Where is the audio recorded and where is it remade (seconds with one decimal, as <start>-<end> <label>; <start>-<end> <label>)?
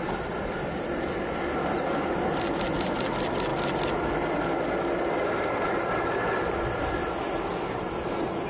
0.0-8.5 recorded